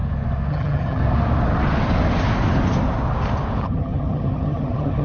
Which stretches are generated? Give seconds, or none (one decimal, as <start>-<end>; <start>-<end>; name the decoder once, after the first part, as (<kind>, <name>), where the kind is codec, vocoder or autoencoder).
0.5-1.0 (vocoder, HiFi-GAN); 3.6-5.0

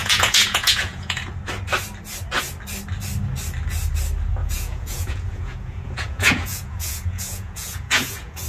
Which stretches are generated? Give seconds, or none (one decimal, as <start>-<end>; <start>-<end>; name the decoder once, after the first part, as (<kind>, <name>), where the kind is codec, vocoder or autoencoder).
0.0-1.3 (vocoder, Vocos); 4.4-8.5